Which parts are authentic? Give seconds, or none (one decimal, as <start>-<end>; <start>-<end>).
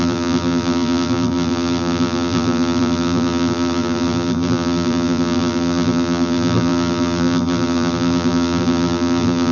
none